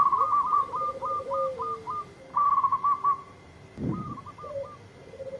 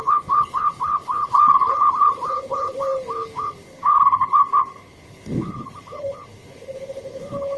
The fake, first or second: second